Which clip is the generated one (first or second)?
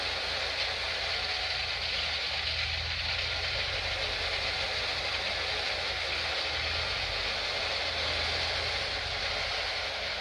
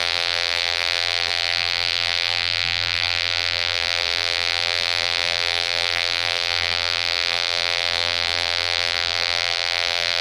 second